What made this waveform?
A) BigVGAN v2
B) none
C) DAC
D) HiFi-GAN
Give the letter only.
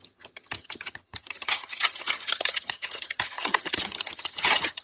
D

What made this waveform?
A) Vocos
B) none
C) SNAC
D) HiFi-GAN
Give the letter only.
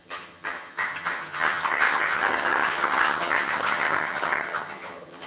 D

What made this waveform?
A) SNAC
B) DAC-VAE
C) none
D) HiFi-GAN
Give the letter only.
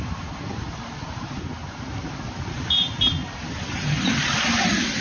C